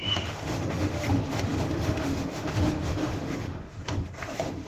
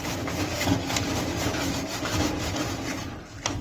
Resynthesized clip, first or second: first